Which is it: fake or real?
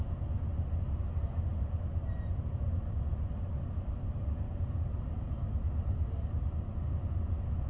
real